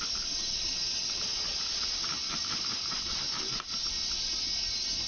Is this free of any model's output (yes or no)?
yes